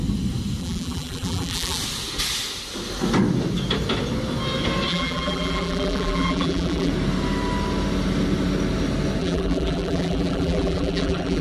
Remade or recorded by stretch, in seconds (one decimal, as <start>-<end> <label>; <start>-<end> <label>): 0.0-0.6 recorded; 0.6-1.8 remade; 1.8-4.9 recorded; 4.9-6.9 remade; 6.9-9.2 recorded; 9.2-11.4 remade